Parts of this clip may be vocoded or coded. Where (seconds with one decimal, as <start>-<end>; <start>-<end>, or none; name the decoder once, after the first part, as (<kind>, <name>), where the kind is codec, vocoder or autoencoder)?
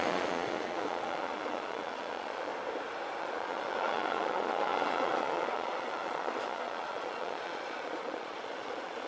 0.0-2.5 (vocoder, Vocos); 3.2-9.1